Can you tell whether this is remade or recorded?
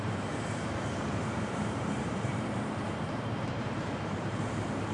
remade